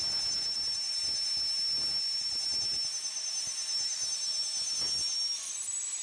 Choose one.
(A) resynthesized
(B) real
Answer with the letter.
B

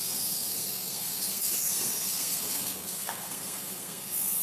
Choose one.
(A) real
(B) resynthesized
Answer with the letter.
B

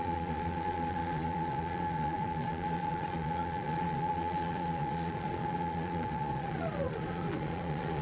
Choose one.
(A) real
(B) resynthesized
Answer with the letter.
B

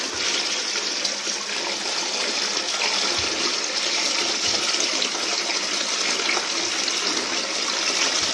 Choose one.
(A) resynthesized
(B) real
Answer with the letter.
B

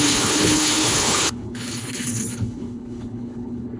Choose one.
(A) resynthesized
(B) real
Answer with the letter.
A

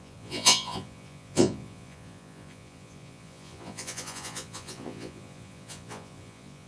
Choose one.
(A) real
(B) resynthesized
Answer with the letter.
B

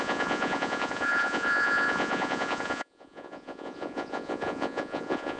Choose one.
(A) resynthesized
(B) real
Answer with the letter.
A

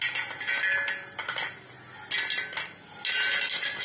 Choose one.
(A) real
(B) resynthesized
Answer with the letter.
A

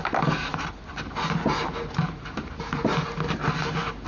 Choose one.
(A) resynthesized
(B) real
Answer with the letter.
B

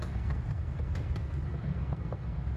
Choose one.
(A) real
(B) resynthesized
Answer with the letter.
B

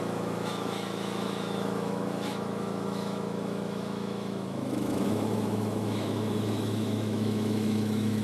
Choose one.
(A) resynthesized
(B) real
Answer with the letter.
A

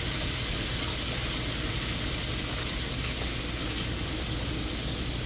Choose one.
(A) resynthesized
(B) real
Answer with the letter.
B